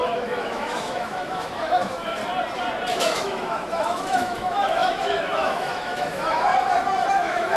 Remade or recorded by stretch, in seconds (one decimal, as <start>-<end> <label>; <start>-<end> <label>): 0.0-2.2 remade; 2.2-2.9 recorded; 2.9-6.5 remade; 6.5-7.1 recorded; 7.1-7.6 remade